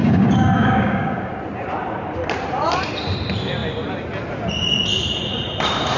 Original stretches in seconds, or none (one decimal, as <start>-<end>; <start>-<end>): 1.2-6.0

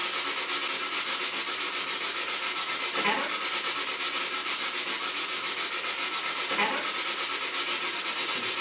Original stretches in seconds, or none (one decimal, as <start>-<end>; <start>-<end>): 0.0-8.6